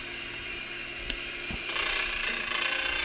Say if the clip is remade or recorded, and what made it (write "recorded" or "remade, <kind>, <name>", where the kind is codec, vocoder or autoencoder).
recorded